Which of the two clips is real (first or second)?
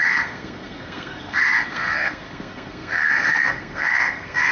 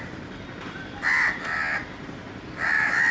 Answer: second